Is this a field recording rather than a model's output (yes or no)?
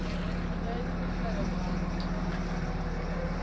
yes